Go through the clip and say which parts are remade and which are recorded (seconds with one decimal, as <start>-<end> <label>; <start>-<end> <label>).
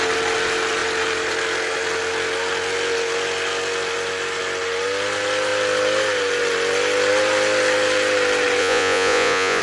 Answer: 0.0-8.6 recorded; 8.6-9.6 remade